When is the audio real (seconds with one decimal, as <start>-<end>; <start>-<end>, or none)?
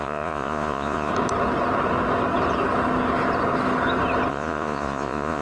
1.1-4.3